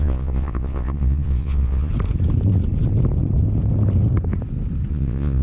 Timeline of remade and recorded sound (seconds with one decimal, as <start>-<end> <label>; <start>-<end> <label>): 0.0-1.9 remade; 1.9-4.9 recorded; 4.9-5.4 remade